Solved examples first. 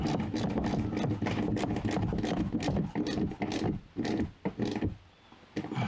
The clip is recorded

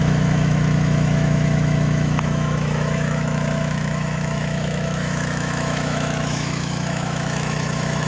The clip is remade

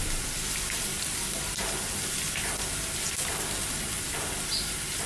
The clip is recorded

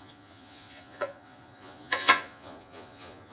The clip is remade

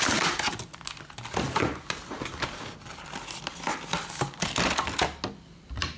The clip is recorded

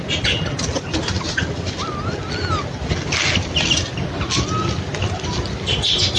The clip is recorded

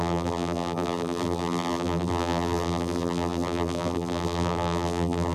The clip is remade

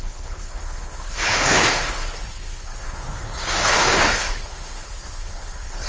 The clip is remade